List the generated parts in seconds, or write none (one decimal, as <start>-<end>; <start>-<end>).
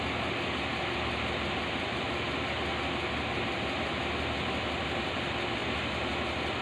none